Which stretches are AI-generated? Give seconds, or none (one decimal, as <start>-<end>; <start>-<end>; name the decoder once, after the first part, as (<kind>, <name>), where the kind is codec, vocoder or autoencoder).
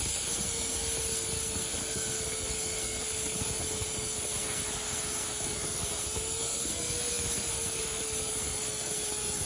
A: 0.0-9.5 (codec, SNAC)